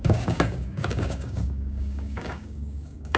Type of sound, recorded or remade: remade